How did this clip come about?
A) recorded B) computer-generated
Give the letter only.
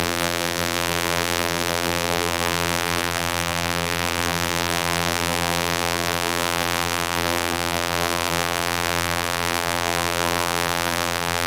B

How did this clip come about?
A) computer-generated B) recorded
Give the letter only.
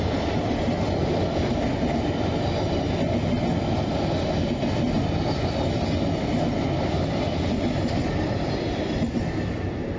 B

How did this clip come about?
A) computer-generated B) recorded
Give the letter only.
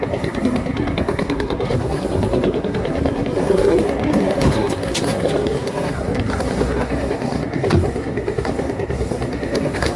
A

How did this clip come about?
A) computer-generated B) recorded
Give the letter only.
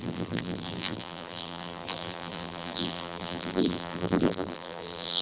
A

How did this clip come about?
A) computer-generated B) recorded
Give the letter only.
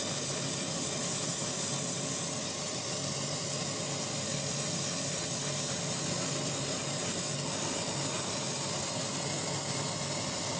B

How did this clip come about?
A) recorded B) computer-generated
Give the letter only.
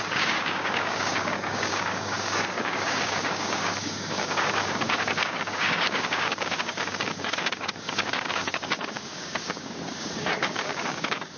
B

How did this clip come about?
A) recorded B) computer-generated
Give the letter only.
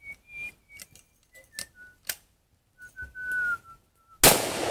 A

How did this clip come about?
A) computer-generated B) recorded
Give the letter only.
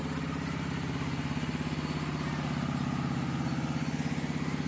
B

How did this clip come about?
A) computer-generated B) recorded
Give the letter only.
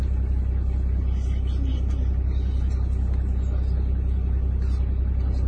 B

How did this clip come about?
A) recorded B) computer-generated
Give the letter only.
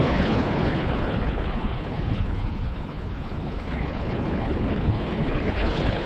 B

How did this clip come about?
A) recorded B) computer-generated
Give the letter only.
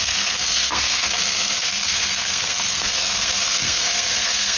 B